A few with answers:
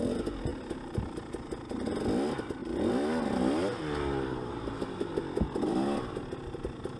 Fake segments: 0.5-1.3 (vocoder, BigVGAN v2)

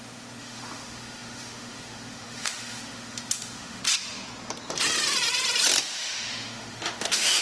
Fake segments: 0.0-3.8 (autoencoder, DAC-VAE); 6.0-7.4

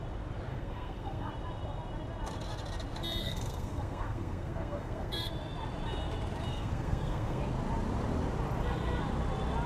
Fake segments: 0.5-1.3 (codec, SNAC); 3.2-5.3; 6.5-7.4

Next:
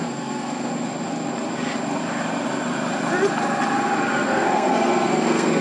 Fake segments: 0.0-0.7 (codec, SNAC); 4.1-5.6

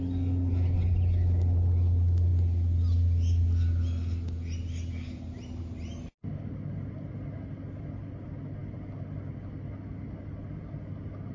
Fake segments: none

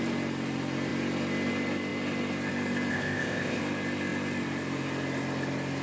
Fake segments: 2.9-3.6 (codec, ZipCodec)

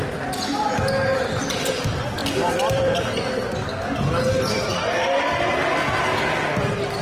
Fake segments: 2.2-3.3 (vocoder, BigVGAN v2)

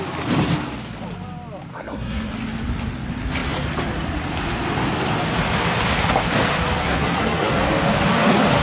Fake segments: 1.7-2.3 (codec, SNAC); 6.8-7.5